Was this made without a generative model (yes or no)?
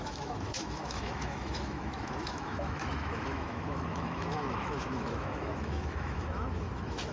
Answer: no